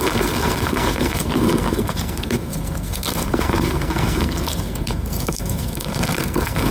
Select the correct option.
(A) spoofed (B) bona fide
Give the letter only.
A